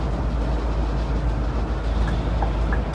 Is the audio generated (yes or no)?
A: no